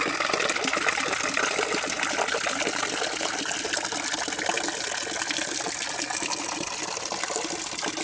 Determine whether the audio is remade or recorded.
recorded